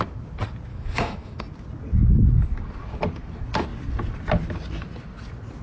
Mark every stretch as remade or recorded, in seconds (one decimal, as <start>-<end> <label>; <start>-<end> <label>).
0.0-0.7 recorded; 0.7-1.4 remade; 1.4-5.6 recorded